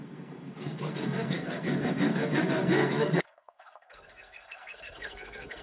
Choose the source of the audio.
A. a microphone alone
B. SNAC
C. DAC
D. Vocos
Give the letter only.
B